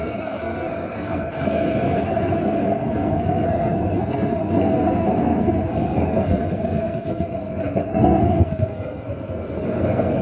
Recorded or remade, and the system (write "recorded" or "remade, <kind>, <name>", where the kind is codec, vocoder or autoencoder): remade, codec, SNAC